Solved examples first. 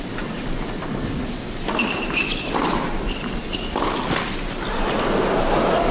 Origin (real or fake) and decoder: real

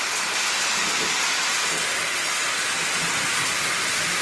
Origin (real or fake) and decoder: real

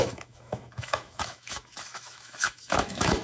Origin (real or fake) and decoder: fake, autoencoder, DAC-VAE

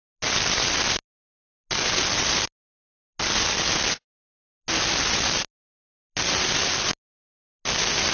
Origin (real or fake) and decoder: real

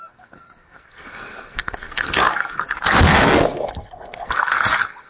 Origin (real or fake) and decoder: fake, codec, SNAC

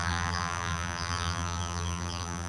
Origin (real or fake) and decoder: fake, vocoder, BigVGAN v2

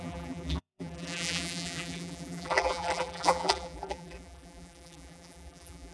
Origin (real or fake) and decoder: fake, vocoder, BigVGAN v2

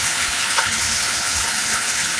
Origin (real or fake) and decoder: fake, codec, HILCodec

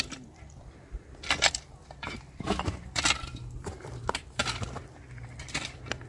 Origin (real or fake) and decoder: fake, vocoder, BigVGAN v2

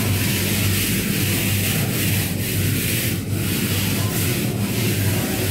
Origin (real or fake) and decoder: real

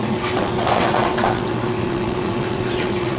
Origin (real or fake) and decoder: fake, vocoder, WaveNeXt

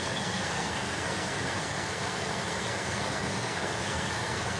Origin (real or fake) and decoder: fake, codec, SNAC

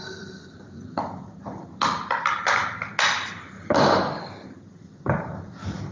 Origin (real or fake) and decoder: real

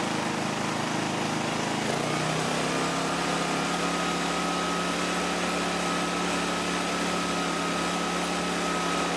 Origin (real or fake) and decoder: real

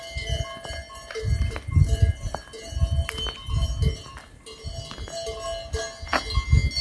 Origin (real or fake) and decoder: real